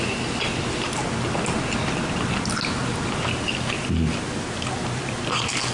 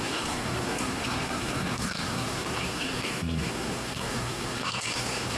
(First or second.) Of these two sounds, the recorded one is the first